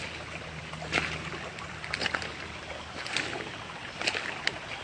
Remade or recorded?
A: recorded